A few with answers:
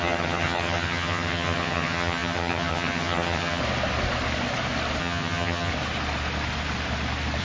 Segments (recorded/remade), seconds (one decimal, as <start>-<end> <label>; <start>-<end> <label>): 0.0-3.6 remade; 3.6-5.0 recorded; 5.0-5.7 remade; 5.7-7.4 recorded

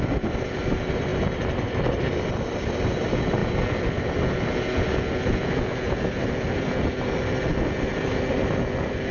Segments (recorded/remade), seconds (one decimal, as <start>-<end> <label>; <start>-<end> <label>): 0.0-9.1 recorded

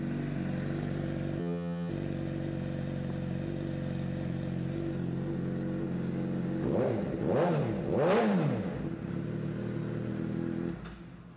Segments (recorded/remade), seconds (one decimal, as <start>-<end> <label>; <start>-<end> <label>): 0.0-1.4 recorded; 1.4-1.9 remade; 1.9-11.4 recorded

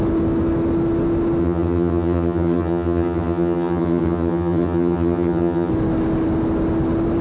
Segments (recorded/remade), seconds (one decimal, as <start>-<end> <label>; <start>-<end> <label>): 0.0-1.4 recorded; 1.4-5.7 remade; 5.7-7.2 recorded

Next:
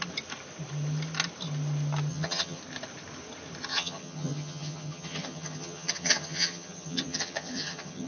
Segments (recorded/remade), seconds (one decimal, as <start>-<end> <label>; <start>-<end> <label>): 0.0-2.1 recorded; 2.1-2.6 remade; 2.6-3.7 recorded; 3.7-8.1 remade